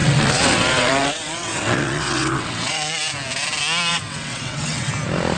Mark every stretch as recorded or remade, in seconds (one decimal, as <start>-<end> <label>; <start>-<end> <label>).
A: 0.0-3.0 remade; 3.0-3.9 recorded; 3.9-4.9 remade; 4.9-5.4 recorded